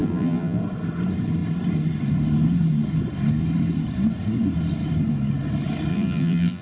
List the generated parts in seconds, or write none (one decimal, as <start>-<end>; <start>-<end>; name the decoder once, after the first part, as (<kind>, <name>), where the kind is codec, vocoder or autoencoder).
0.0-0.6 (vocoder, BigVGAN v2); 5.9-6.6